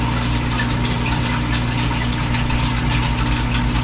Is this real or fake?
real